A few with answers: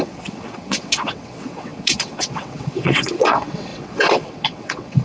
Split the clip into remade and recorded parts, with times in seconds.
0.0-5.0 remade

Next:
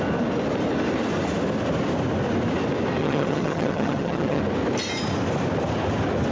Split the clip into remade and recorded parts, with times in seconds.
0.0-3.0 recorded; 3.0-4.4 remade; 4.4-6.3 recorded

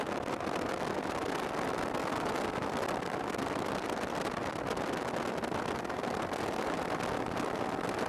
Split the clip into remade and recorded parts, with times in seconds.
0.0-2.0 recorded; 2.0-2.5 remade; 2.5-8.1 recorded

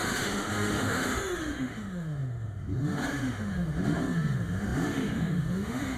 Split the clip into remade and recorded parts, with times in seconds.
0.0-6.0 remade

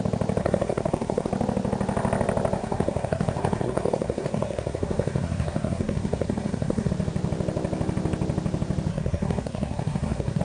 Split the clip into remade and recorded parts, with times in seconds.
0.0-0.4 recorded; 0.4-1.3 remade; 1.3-2.6 recorded; 2.6-6.9 remade; 6.9-8.9 recorded; 8.9-10.4 remade

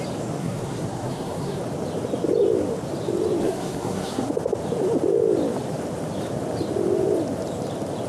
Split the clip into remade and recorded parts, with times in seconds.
0.0-0.4 recorded; 0.4-1.6 remade; 1.6-3.4 recorded; 3.4-4.3 remade; 4.3-8.1 recorded